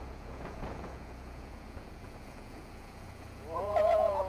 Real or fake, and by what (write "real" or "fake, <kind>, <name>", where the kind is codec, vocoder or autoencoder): fake, vocoder, Vocos